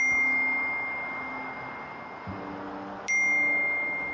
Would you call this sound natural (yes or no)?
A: yes